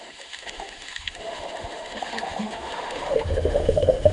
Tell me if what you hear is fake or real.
fake